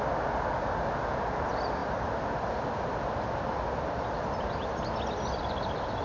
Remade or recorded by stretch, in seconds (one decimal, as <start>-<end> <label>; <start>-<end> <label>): 0.0-6.0 recorded